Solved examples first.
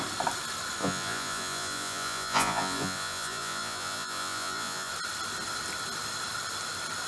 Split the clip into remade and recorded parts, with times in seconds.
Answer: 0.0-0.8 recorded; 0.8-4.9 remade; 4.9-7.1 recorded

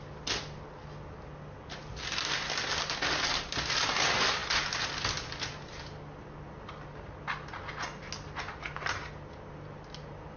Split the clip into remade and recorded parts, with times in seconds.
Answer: 0.0-10.4 recorded